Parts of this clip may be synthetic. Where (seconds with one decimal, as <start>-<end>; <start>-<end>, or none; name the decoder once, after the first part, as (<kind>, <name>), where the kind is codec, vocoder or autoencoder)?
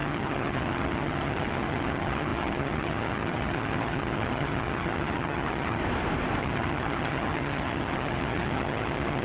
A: 0.0-5.8 (vocoder, HiFi-GAN); 6.4-9.2